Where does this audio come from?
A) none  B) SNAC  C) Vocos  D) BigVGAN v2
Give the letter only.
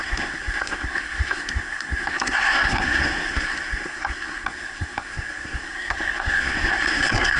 B